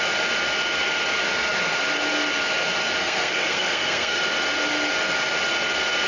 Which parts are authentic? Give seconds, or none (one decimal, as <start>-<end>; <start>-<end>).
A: 0.0-3.0; 4.2-6.1